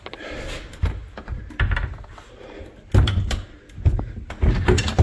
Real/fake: real